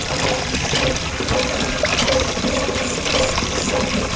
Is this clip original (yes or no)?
yes